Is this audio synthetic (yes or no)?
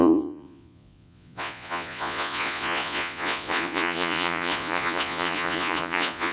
yes